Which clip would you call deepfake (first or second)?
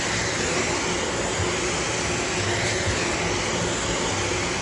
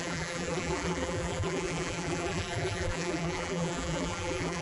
second